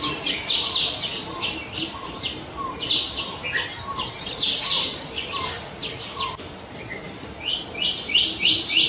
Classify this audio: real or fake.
real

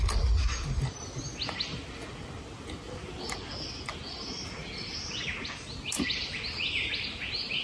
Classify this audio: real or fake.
real